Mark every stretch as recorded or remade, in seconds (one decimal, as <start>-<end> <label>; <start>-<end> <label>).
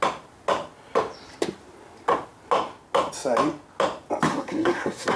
0.0-4.3 recorded; 4.3-5.2 remade